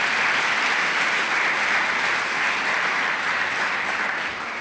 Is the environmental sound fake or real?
real